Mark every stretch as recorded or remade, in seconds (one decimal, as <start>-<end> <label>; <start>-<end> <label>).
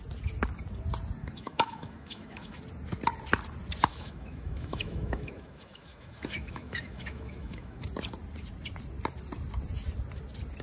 0.0-1.2 recorded; 1.2-2.6 remade; 2.6-3.9 recorded; 3.9-7.8 remade; 7.8-10.6 recorded